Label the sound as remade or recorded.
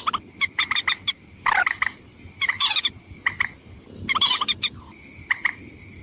recorded